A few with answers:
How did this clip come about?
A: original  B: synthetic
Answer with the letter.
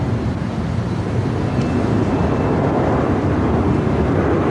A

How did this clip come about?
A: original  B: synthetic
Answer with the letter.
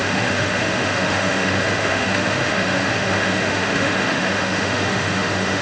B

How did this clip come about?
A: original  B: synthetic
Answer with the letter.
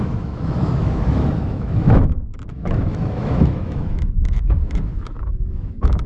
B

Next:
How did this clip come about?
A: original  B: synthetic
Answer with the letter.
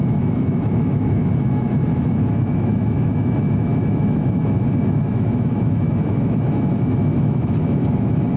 B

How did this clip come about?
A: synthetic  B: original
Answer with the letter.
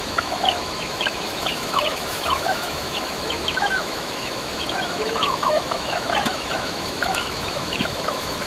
A